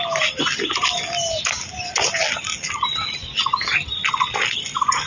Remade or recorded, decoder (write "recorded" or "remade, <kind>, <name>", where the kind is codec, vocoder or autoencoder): recorded